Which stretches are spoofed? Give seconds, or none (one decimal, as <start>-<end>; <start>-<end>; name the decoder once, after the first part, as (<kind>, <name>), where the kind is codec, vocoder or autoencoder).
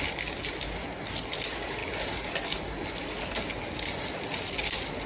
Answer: none